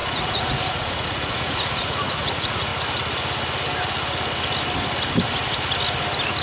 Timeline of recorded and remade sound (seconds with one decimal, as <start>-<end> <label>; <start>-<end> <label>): 0.0-2.7 remade; 2.7-6.4 recorded